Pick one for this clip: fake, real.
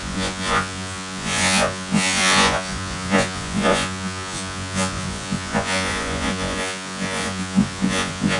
fake